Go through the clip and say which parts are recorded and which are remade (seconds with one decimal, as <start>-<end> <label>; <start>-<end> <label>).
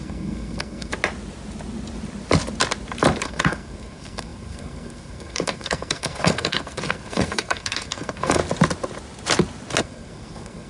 0.0-0.9 remade; 0.9-3.2 recorded; 3.2-8.4 remade; 8.4-9.8 recorded; 9.8-10.7 remade